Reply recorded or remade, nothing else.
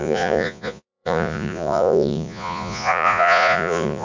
remade